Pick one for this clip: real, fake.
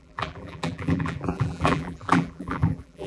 fake